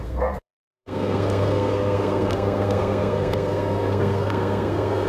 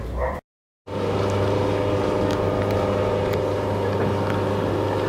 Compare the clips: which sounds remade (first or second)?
first